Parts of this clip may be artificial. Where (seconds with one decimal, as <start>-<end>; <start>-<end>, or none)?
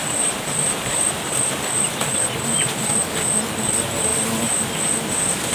0.0-2.2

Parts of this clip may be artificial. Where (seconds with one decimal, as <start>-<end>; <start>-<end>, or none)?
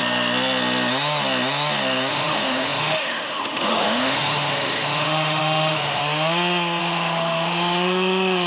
2.1-6.0; 6.8-8.5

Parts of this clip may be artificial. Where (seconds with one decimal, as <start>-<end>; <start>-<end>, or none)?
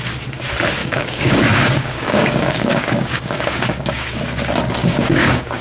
0.8-4.2; 4.8-5.6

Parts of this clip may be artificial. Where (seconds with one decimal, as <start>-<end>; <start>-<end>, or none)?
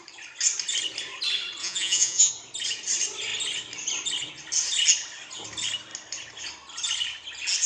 1.6-2.3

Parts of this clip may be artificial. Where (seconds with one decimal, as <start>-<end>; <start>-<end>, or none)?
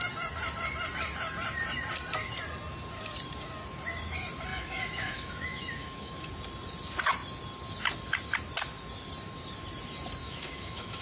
4.5-6.3; 10.2-11.0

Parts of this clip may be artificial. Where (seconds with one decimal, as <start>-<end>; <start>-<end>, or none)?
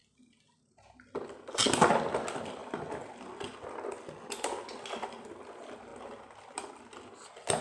none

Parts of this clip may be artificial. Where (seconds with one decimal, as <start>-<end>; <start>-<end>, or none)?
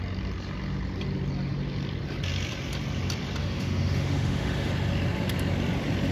3.4-4.7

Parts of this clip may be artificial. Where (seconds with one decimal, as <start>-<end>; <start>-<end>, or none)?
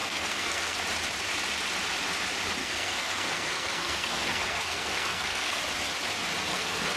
0.0-0.8; 2.6-5.6; 6.5-7.0